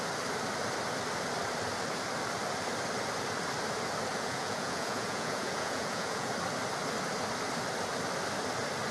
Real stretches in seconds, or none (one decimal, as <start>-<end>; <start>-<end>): 0.0-4.1; 6.3-8.9